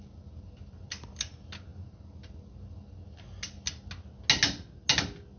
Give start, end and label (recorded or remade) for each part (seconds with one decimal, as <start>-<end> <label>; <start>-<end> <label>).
0.0-5.4 recorded